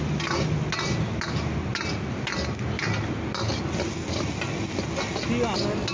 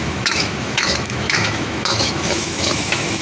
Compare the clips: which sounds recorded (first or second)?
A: first